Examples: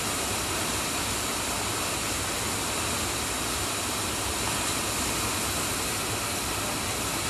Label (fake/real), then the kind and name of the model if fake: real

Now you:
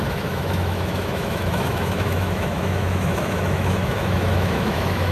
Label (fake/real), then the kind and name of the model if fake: fake, autoencoder, DAC-VAE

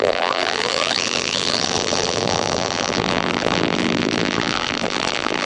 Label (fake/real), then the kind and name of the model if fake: fake, vocoder, BigVGAN v2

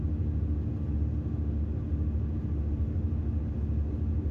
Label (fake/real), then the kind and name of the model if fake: real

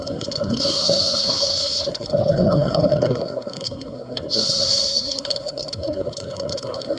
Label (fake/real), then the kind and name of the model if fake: fake, codec, SNAC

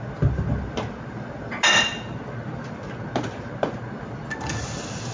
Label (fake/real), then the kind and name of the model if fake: real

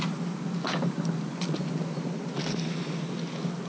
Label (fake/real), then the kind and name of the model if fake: real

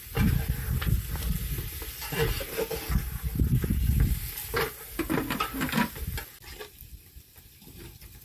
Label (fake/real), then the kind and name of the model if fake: real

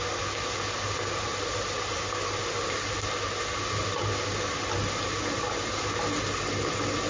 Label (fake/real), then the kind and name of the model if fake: real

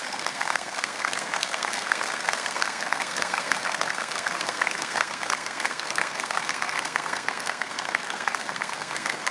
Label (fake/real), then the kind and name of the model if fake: fake, codec, SNAC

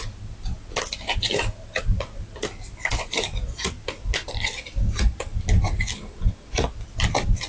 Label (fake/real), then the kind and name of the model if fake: real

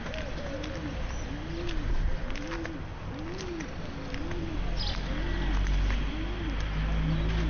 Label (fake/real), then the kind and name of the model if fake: real